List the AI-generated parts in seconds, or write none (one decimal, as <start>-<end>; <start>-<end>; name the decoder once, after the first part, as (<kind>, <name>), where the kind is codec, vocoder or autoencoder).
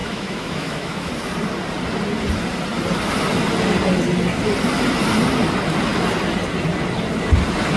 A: 0.0-1.1 (autoencoder, DAC-VAE)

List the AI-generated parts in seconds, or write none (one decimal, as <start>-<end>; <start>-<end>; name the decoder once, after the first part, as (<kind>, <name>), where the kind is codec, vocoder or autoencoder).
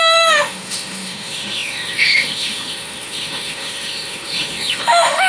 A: 0.0-5.3 (autoencoder, DAC-VAE)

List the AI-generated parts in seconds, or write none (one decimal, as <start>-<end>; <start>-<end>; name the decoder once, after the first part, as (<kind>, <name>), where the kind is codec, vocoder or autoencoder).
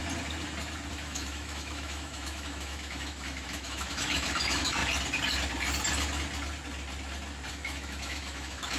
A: 0.9-4.8 (autoencoder, DAC-VAE); 7.5-8.8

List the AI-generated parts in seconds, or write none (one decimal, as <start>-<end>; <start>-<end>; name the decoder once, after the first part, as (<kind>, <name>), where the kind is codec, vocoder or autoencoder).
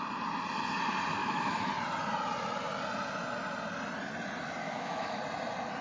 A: 1.2-1.7 (autoencoder, DAC-VAE); 4.6-5.2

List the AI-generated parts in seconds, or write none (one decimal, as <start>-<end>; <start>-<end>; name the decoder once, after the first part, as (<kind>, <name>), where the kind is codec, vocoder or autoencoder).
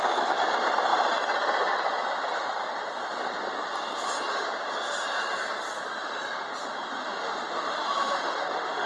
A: 7.0-8.9 (autoencoder, DAC-VAE)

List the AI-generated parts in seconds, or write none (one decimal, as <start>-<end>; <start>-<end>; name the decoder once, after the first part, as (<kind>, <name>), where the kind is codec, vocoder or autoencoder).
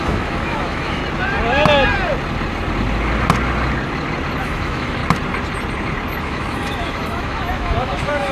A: 0.0-1.0 (autoencoder, DAC-VAE); 4.4-5.0; 6.2-8.3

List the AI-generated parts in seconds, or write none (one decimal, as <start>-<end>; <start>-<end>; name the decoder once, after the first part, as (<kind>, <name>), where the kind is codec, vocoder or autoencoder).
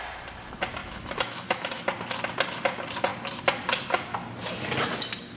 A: 0.8-1.8 (autoencoder, DAC-VAE)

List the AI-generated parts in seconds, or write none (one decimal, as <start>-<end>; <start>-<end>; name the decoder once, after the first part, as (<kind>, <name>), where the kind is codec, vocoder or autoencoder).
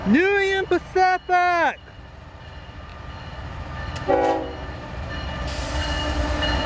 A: none